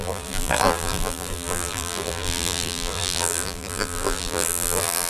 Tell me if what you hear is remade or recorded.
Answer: remade